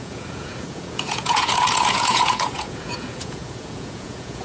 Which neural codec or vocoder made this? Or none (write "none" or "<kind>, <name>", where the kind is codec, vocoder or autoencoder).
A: vocoder, Vocos